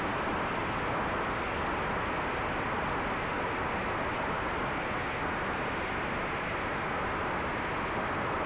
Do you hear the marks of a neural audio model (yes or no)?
no